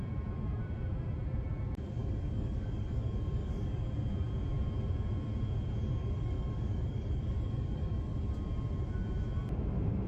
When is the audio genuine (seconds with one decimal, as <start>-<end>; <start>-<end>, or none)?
0.0-2.0; 3.9-6.0; 8.3-10.1